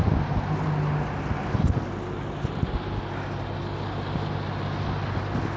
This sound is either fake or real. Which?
real